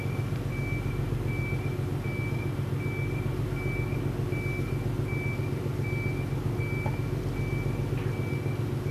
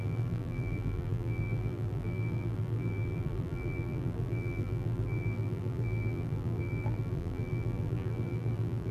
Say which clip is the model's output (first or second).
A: second